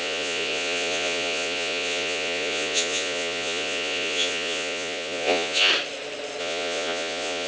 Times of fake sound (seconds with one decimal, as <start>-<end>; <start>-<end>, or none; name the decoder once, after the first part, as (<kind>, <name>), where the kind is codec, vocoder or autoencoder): 0.0-5.7 (vocoder, Vocos); 6.4-7.5